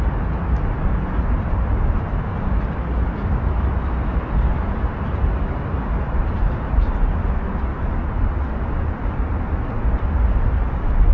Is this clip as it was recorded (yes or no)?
yes